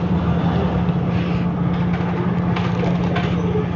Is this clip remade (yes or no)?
no